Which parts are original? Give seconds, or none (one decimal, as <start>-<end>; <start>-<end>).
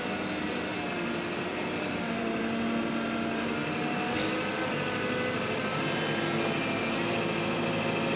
0.0-1.5; 2.4-8.2